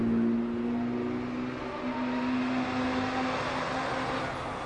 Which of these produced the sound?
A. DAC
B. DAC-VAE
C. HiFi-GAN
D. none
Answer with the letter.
D